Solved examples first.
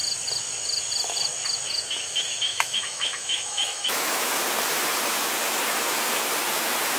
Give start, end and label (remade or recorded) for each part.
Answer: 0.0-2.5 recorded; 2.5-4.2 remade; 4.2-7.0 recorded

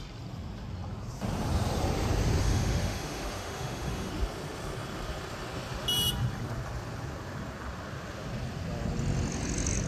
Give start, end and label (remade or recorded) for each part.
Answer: 0.0-2.4 recorded; 2.4-4.1 remade; 4.1-9.9 recorded

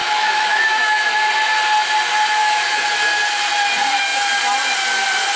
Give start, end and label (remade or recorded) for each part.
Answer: 0.0-1.1 remade; 1.1-2.4 recorded; 2.4-2.9 remade; 2.9-5.4 recorded

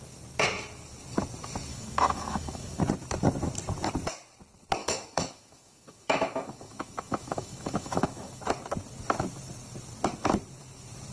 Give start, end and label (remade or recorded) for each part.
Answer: 0.0-1.7 recorded; 1.7-2.8 remade; 2.8-4.8 recorded; 4.8-8.4 remade; 8.4-11.1 recorded

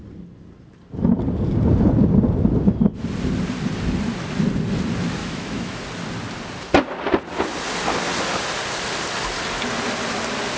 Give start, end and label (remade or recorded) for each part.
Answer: 0.0-5.2 recorded; 5.2-5.8 remade; 5.8-10.6 recorded